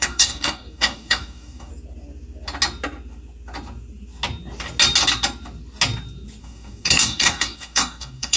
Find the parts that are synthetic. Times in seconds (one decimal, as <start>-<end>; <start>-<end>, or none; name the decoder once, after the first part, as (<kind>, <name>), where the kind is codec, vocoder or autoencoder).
0.0-1.7 (codec, DAC); 6.4-8.4